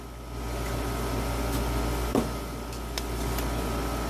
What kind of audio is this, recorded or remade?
recorded